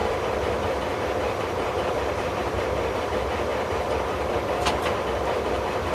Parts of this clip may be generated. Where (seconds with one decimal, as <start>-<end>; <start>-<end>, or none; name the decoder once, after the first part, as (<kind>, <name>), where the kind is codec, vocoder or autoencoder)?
0.0-3.0 (vocoder, BigVGAN v2); 3.5-5.9